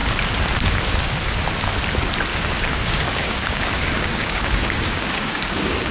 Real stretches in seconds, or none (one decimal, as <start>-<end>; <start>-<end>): 0.0-2.3